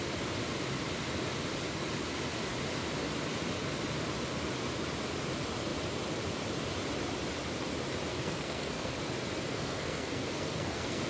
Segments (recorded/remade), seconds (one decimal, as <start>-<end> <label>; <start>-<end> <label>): 0.0-8.1 recorded; 8.1-9.0 remade; 9.0-9.5 recorded; 9.5-11.1 remade